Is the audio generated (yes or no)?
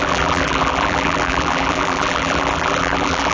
yes